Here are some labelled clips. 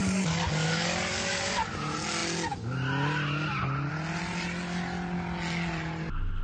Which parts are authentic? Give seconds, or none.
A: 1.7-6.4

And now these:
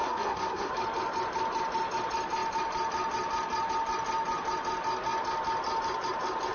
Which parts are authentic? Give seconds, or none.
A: 0.7-6.5